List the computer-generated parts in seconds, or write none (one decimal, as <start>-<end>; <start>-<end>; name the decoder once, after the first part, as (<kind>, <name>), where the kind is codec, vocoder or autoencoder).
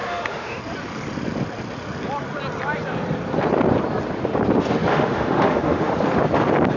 0.0-0.6 (autoencoder, DAC-VAE); 4.9-5.9